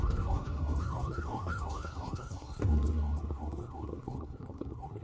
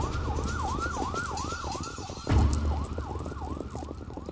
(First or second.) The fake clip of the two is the first